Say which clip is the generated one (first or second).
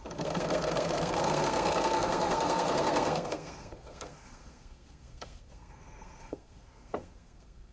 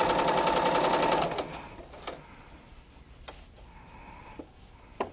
first